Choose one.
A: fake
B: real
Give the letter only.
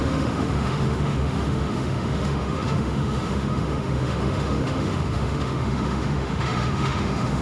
A